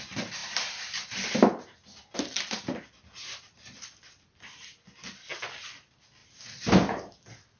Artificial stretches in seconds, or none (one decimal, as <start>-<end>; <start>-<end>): 0.4-4.4; 6.2-7.6